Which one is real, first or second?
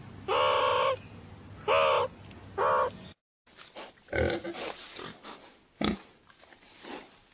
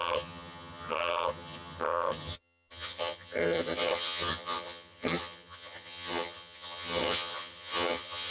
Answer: first